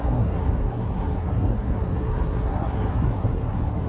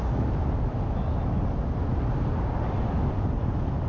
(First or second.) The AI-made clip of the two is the first